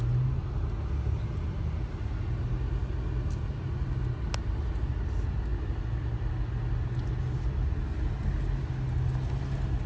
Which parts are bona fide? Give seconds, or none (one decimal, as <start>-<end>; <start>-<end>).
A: 0.0-9.9